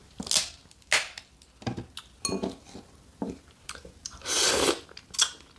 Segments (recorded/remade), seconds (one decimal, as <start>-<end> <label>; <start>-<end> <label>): 0.0-5.6 recorded